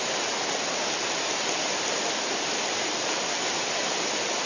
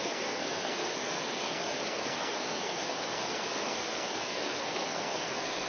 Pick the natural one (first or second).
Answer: first